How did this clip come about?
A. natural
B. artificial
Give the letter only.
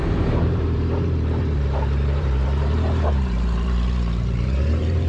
B